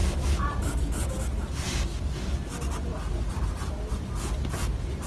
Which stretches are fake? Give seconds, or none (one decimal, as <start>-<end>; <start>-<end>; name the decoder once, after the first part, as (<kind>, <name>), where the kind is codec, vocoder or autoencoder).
none